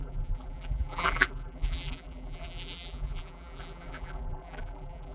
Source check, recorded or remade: remade